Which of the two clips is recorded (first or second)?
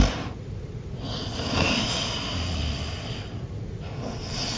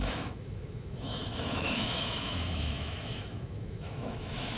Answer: first